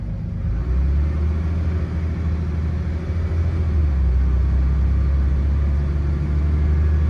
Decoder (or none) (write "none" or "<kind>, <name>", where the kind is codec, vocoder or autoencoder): none